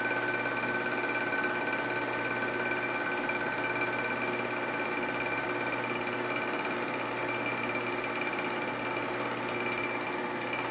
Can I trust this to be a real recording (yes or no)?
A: yes